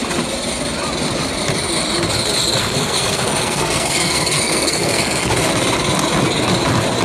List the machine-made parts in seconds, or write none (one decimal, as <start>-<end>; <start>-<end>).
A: 2.6-5.3